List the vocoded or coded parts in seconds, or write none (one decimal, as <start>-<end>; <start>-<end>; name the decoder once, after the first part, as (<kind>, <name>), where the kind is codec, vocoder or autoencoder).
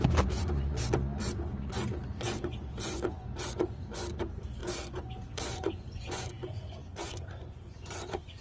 0.0-8.4 (vocoder, Vocos)